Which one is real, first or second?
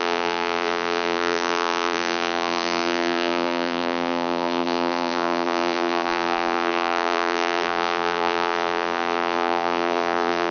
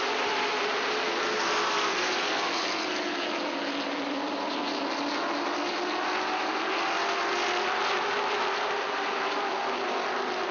second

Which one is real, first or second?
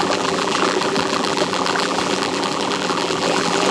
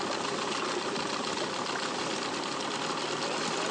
second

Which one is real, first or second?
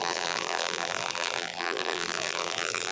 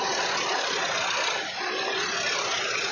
second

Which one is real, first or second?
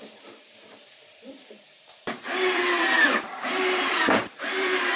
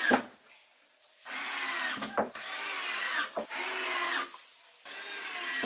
second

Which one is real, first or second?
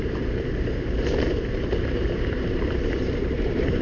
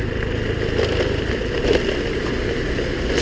second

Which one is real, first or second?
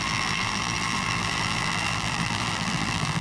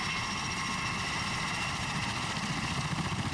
second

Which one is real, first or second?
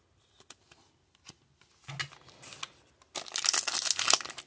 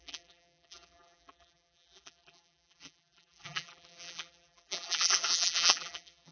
first